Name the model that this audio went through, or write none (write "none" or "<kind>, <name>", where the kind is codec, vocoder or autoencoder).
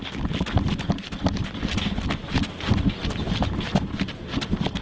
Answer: none